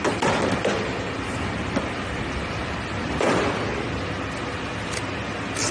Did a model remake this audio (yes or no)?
no